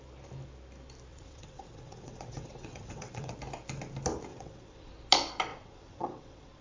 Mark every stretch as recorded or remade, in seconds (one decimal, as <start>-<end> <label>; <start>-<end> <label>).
0.0-1.1 recorded; 1.1-3.3 remade; 3.3-4.3 recorded; 4.3-4.9 remade; 4.9-5.5 recorded; 5.5-6.6 remade